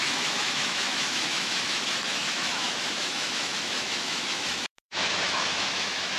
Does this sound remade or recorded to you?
remade